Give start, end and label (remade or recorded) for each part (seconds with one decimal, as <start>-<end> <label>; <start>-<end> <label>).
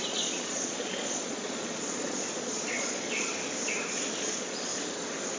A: 0.0-3.3 remade; 3.3-4.2 recorded; 4.2-4.7 remade; 4.7-5.4 recorded